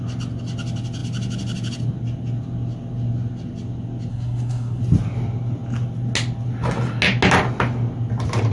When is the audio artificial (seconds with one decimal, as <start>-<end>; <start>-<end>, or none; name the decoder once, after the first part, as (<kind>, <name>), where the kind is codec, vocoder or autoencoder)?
4.1-4.8 (codec, SNAC)